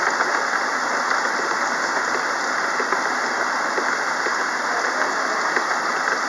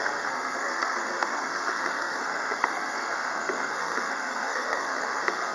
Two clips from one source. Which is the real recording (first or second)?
first